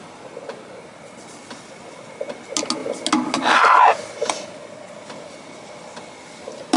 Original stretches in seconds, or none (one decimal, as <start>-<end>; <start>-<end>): 0.0-6.8